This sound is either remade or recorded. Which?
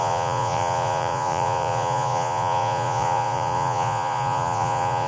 remade